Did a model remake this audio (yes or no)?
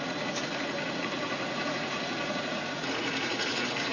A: yes